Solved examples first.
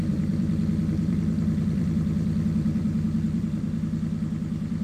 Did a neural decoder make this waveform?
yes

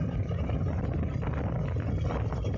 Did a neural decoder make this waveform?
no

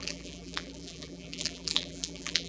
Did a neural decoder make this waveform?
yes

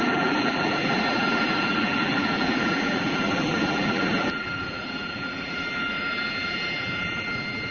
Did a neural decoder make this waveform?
yes